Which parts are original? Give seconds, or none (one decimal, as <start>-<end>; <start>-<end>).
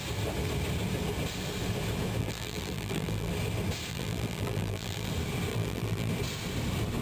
0.0-2.2; 3.3-3.9; 5.1-5.5; 6.1-7.0